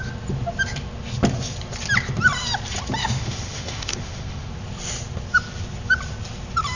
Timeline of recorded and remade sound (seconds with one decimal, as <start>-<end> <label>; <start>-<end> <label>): 0.0-3.0 recorded; 3.0-4.5 remade; 4.5-6.8 recorded